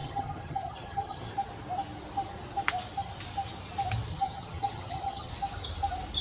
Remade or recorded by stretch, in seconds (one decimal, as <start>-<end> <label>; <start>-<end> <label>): 0.0-1.3 remade; 1.3-4.1 recorded; 4.1-5.3 remade; 5.3-6.2 recorded